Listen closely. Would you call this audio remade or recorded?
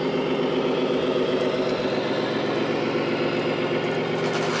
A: recorded